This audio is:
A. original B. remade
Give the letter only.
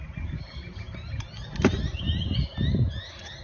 A